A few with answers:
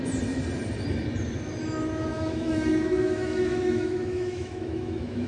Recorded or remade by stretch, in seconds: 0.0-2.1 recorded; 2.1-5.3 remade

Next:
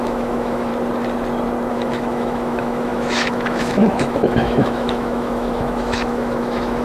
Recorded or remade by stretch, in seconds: 0.0-0.7 remade; 0.7-1.7 recorded; 1.7-6.8 remade